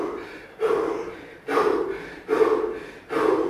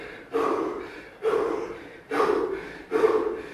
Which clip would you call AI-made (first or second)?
second